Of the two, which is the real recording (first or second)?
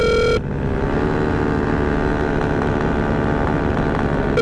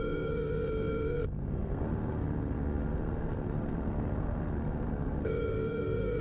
first